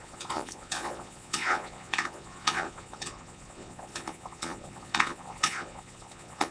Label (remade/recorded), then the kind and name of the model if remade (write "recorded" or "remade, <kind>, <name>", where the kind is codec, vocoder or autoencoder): remade, vocoder, Vocos